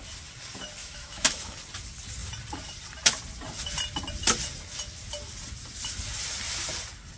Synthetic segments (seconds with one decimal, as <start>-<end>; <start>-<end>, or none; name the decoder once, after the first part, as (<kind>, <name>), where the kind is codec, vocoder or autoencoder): 0.8-1.6 (autoencoder, DAC-VAE)